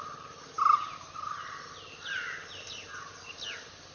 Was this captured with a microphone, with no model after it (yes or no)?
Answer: yes